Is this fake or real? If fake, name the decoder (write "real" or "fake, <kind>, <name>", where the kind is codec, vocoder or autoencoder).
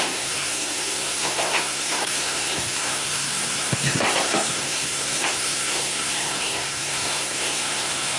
fake, codec, SNAC